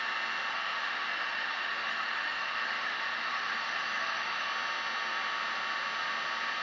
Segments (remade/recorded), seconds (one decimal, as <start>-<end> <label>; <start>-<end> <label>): 0.0-0.5 recorded; 0.5-4.5 remade; 4.5-6.6 recorded